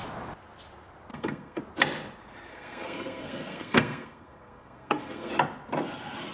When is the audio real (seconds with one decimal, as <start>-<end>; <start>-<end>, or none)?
0.0-1.1; 1.6-2.5; 5.3-6.3